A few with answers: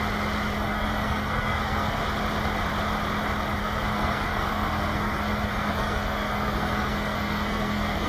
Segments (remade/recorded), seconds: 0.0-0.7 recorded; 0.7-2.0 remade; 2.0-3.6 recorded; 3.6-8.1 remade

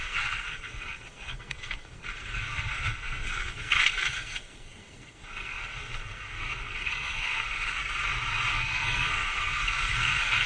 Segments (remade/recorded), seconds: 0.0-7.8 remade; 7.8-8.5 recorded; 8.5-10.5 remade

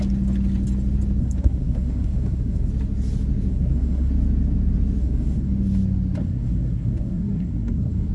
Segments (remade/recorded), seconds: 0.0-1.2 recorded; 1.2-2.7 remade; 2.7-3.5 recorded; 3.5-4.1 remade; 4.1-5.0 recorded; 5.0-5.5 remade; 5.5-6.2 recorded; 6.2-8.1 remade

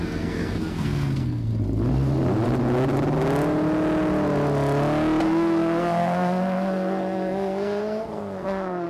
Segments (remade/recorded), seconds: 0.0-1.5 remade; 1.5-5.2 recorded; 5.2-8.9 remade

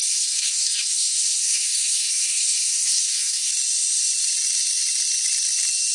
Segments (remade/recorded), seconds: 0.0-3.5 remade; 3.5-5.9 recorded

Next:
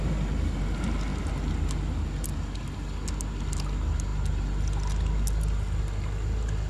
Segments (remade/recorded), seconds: 0.0-6.7 recorded